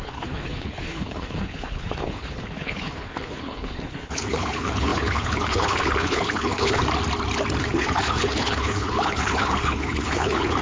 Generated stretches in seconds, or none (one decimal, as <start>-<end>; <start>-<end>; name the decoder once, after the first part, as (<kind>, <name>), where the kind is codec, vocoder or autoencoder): 0.0-6.8 (codec, HILCodec); 7.6-10.6